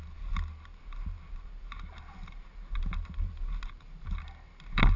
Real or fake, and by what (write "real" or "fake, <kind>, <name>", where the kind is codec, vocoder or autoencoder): real